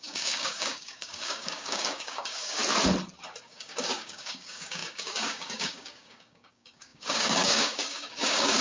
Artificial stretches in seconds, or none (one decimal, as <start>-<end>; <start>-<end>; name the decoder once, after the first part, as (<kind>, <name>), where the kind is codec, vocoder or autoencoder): 0.0-2.6 (codec, DAC); 3.4-8.6